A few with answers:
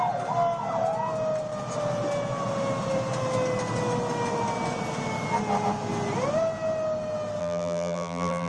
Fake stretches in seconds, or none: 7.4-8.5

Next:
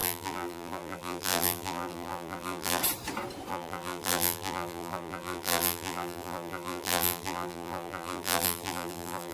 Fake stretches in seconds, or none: 0.0-2.8; 3.5-9.3